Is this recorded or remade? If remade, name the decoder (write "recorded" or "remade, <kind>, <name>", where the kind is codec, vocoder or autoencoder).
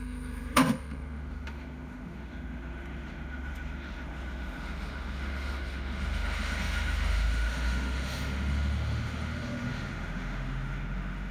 remade, autoencoder, DAC-VAE